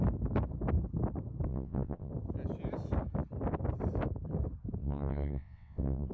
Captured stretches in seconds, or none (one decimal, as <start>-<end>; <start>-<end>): 0.0-1.5; 2.1-4.8

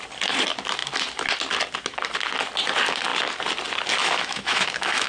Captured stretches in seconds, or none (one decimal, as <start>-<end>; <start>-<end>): 0.0-4.0

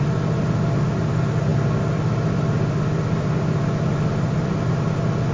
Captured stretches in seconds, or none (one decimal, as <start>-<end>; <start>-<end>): 0.0-5.3

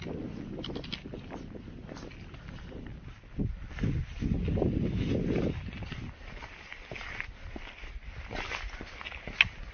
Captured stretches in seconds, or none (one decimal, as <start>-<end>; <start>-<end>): 0.0-9.7

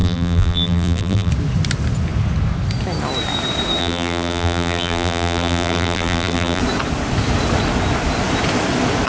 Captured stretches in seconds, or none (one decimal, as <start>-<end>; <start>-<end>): 1.3-3.8; 6.6-9.1